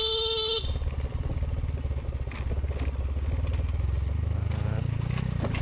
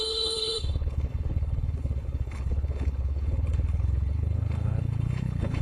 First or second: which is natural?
first